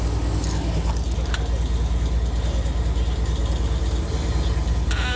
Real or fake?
real